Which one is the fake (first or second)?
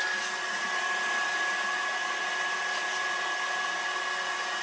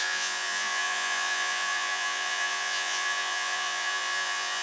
second